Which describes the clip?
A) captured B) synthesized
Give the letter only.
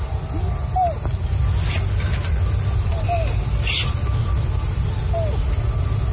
A